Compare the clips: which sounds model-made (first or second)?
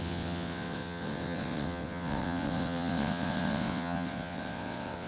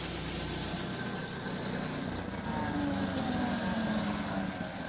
first